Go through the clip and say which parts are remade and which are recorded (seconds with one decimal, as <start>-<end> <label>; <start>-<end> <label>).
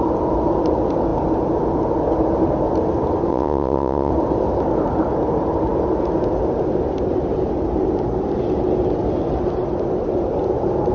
0.0-3.3 recorded; 3.3-4.1 remade; 4.1-10.9 recorded